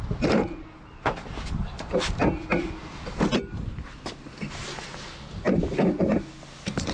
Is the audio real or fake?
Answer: real